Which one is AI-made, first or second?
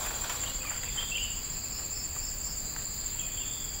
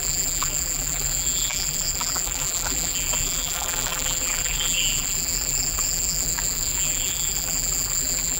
second